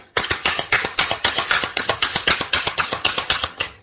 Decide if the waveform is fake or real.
fake